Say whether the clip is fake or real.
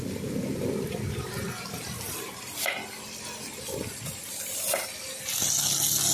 real